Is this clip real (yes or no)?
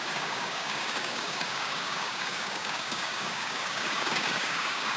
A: no